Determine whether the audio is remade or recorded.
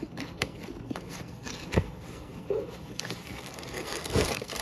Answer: remade